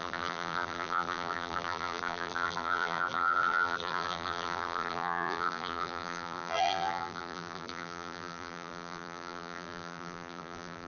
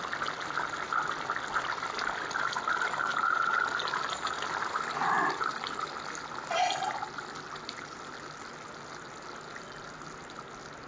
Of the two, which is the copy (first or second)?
first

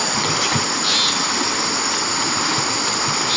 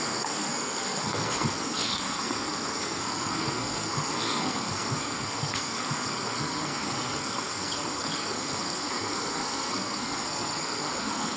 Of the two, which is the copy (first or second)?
second